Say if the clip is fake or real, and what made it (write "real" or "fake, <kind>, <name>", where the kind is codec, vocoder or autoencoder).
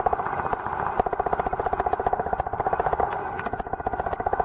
real